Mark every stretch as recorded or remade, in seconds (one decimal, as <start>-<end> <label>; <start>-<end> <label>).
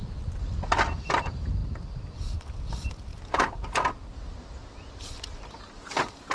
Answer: 0.0-6.3 recorded